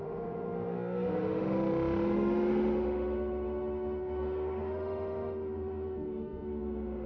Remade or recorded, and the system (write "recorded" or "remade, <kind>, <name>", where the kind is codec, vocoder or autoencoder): remade, autoencoder, DAC-VAE